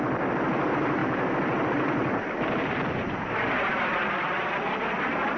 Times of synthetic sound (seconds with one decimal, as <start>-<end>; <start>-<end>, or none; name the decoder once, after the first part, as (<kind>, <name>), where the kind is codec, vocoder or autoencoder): 0.0-5.4 (vocoder, BigVGAN v2)